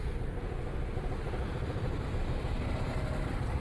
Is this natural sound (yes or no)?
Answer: yes